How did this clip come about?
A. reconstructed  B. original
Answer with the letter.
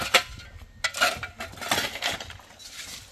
B